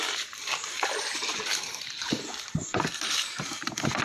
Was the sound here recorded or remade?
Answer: remade